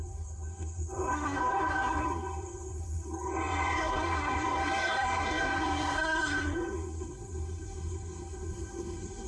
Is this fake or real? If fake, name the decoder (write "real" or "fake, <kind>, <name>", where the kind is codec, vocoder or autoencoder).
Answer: fake, codec, SNAC